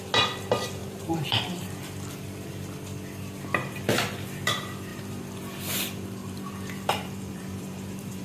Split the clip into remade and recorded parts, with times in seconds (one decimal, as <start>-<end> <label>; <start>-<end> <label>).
0.0-0.8 recorded; 0.8-1.4 remade; 1.4-4.9 recorded; 4.9-5.4 remade; 5.4-6.2 recorded; 6.2-8.2 remade